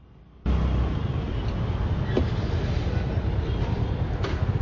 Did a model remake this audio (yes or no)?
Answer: no